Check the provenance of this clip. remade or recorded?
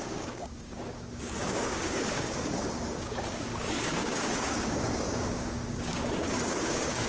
remade